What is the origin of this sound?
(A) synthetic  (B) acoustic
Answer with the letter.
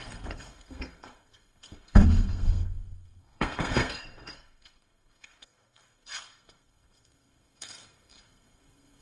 A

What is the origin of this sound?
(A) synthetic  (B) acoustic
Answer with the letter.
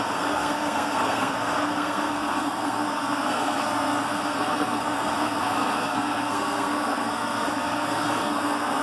A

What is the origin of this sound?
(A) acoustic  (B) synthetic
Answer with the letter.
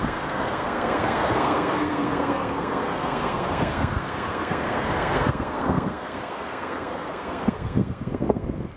B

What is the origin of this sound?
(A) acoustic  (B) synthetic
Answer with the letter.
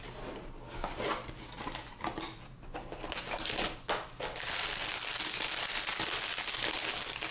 A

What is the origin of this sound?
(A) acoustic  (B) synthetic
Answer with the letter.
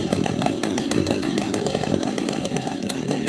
B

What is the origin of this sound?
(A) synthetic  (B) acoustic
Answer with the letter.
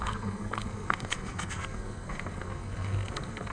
A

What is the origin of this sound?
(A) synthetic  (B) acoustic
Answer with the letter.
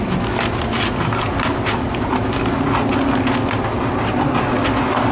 B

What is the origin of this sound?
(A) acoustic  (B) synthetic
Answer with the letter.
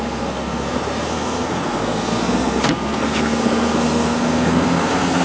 B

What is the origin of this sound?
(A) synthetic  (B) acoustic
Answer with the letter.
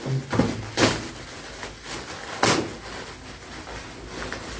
B